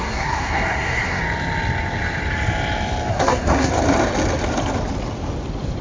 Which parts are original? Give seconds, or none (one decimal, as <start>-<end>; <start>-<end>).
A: 1.2-3.1; 3.7-5.8